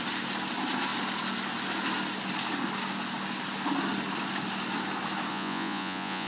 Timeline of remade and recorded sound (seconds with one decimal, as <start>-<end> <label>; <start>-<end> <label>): 0.0-5.3 recorded; 5.3-6.3 remade